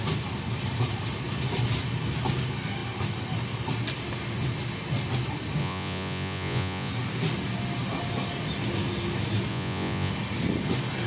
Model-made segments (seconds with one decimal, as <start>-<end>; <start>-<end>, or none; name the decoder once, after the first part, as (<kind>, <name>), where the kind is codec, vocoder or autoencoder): 5.6-6.9 (vocoder, Vocos); 9.5-10.1